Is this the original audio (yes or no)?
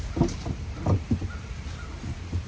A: no